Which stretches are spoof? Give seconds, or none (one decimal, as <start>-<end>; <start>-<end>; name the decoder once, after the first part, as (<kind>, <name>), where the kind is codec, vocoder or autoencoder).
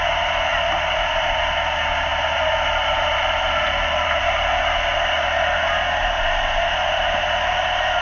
0.5-1.4 (vocoder, BigVGAN v2); 2.1-4.6